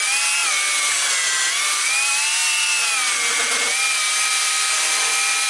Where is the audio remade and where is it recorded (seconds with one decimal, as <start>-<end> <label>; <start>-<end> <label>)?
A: 0.0-5.5 recorded